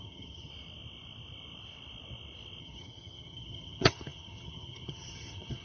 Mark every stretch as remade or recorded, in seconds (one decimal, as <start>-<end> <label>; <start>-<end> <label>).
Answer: 0.0-0.5 remade; 0.5-2.6 recorded; 2.6-5.6 remade